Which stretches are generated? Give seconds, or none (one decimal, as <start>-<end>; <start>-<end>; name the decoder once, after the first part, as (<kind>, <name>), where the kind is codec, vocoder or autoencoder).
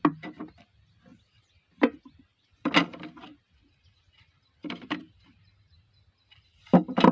1.1-2.7 (vocoder, BigVGAN v2); 3.3-5.9